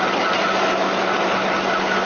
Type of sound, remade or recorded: recorded